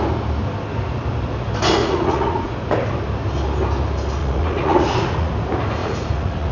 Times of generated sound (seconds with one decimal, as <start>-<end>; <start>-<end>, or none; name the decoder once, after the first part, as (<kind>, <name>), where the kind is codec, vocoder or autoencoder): 1.8-2.5 (vocoder, Vocos); 4.2-5.3; 5.8-6.5